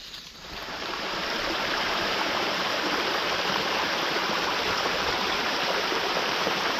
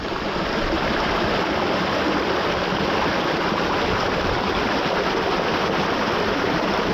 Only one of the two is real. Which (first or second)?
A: second